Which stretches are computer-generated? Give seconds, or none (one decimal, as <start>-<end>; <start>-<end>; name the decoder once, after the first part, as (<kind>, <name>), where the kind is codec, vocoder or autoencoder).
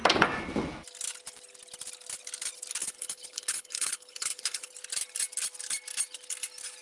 2.8-4.7 (codec, HILCodec)